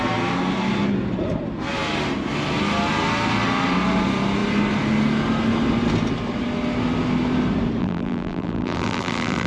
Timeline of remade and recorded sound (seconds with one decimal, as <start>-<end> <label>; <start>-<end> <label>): 0.0-7.8 recorded; 7.8-9.5 remade